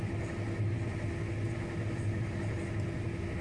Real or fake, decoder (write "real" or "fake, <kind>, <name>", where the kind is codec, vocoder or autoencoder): real